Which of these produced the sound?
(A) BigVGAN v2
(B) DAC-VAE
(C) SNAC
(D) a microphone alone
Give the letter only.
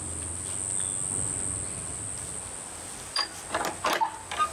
D